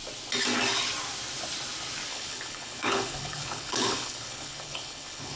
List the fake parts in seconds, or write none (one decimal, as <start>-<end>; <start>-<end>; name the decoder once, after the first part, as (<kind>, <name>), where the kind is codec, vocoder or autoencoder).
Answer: 2.1-5.4 (codec, HILCodec)